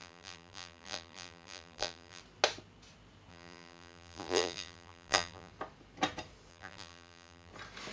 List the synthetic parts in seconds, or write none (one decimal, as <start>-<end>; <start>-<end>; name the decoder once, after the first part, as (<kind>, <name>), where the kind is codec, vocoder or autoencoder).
0.0-2.2 (vocoder, BigVGAN v2); 3.3-5.5; 6.5-7.5